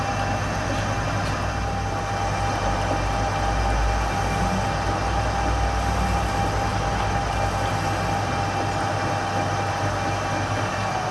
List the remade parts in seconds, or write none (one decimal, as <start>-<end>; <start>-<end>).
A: none